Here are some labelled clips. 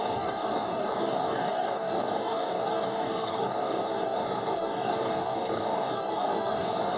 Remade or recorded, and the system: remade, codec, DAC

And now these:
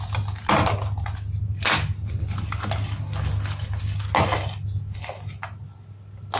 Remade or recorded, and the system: recorded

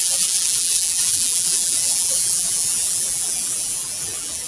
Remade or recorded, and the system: remade, vocoder, BigVGAN v2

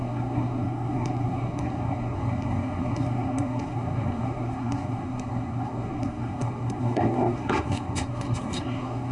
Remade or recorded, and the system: remade, codec, SNAC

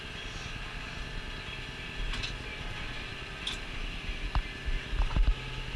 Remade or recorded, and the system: recorded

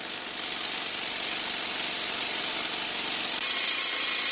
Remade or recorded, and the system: recorded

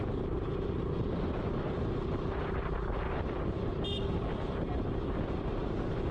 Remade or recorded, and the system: recorded